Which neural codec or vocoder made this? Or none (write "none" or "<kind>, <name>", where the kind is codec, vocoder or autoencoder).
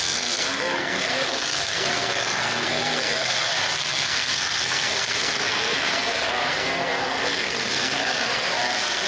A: codec, SNAC